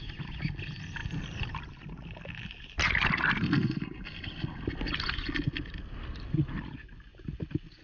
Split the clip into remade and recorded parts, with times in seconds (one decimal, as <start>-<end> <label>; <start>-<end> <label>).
0.0-7.8 recorded